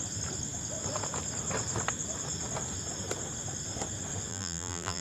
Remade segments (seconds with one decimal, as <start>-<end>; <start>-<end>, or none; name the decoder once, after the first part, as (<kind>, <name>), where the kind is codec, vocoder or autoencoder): 4.3-5.0 (vocoder, BigVGAN v2)

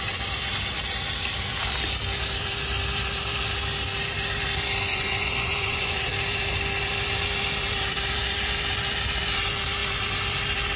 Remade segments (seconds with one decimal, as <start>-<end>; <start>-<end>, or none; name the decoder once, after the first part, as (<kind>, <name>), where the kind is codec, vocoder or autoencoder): 4.9-6.1 (vocoder, Vocos)